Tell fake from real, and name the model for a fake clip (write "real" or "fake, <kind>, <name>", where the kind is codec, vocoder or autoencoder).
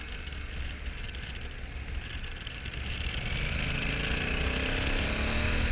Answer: real